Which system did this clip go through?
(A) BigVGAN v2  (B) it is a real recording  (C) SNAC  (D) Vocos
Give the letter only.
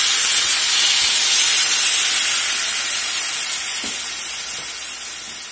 B